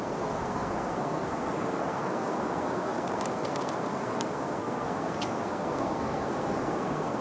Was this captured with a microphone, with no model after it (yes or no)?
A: no